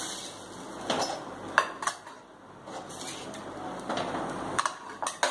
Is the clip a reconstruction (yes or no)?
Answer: no